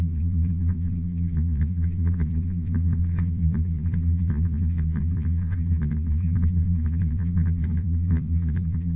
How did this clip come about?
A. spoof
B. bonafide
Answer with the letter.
A